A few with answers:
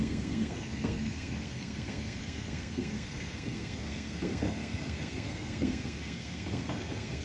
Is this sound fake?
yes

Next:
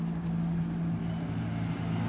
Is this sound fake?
no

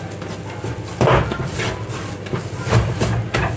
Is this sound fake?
no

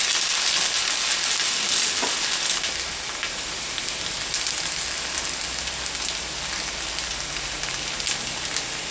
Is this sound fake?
no